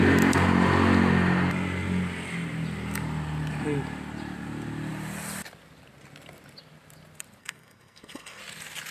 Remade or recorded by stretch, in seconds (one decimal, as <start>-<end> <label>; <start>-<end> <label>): 0.0-7.4 recorded; 7.4-8.4 remade; 8.4-8.9 recorded